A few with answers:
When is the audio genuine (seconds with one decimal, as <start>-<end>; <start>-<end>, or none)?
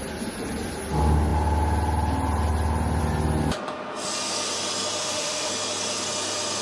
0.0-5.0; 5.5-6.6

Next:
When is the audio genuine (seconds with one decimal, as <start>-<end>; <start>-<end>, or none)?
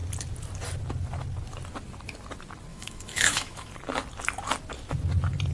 0.0-2.7; 3.7-5.5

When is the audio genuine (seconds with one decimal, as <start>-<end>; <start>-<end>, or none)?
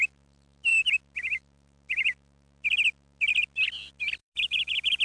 0.0-4.2